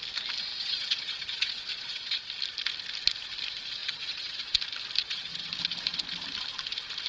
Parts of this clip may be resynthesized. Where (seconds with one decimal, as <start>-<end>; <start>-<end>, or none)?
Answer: 0.5-2.3; 3.8-4.6; 5.0-5.5